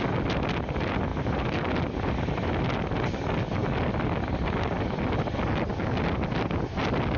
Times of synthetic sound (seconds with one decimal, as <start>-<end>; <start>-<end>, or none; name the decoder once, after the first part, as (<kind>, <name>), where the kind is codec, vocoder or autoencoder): none